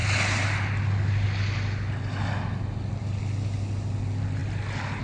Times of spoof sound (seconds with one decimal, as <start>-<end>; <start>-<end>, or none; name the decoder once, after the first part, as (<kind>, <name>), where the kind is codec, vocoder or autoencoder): none